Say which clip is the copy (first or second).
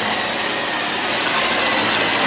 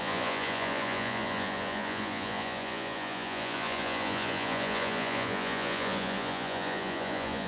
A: second